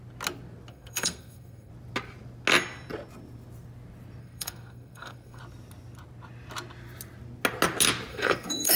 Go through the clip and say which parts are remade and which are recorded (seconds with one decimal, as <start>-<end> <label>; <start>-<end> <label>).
0.0-0.7 recorded; 0.7-1.7 remade; 1.7-4.2 recorded; 4.2-5.4 remade; 5.4-8.1 recorded; 8.1-8.8 remade